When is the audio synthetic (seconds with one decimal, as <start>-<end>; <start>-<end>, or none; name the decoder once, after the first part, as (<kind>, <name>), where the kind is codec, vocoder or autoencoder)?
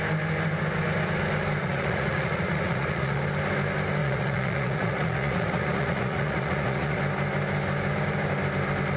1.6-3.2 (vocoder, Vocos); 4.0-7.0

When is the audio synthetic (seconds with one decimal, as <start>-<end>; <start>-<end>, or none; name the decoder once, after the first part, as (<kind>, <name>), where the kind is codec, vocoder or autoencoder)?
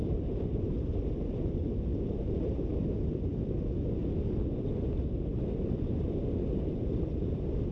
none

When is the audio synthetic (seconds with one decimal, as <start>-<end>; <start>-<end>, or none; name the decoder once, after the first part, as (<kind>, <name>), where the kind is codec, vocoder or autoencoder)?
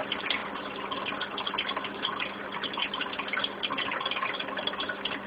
none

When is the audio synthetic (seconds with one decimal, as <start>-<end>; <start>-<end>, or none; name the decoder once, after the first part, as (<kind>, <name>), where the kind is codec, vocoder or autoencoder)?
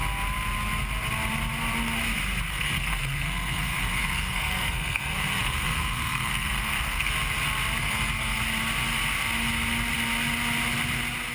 2.5-7.1 (codec, SNAC); 7.8-8.4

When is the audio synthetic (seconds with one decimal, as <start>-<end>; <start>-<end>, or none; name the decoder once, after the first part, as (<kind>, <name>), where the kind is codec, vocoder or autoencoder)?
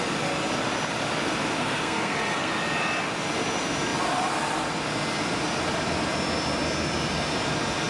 1.6-2.5 (codec, SNAC)